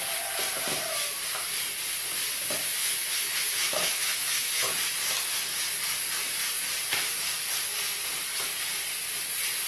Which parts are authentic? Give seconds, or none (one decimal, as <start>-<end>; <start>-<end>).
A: 0.0-2.8; 4.7-9.7